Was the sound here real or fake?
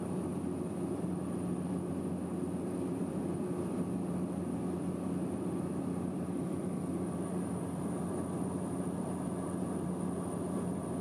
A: real